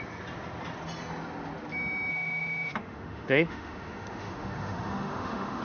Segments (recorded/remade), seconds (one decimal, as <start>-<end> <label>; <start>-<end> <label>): 0.0-2.1 recorded; 2.1-5.6 remade